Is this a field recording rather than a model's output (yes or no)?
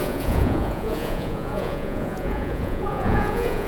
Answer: no